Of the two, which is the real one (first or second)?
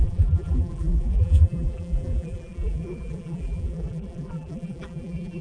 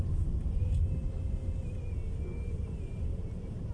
second